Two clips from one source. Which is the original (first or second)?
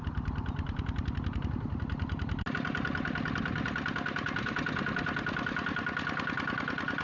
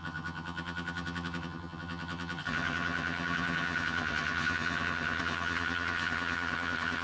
first